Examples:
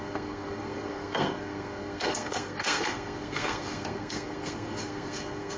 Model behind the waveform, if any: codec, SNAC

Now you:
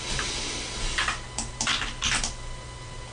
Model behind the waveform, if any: none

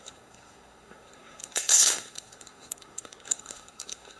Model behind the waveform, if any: codec, SNAC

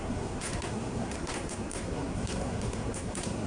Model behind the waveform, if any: codec, SNAC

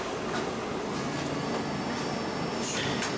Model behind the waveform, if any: none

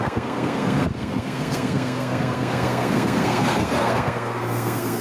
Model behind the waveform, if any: codec, SNAC